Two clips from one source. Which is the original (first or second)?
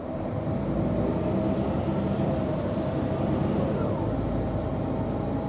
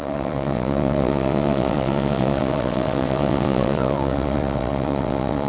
first